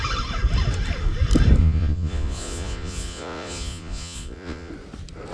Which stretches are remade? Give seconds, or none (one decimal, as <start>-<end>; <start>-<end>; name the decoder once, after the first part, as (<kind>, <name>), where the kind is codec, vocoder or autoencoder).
1.6-4.7 (vocoder, Vocos)